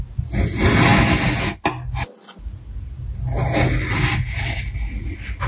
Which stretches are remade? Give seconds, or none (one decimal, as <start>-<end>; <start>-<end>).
none